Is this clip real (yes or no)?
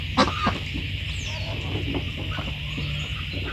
yes